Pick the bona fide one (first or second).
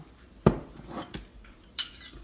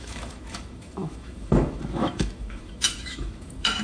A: first